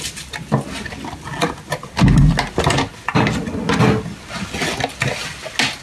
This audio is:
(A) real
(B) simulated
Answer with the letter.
A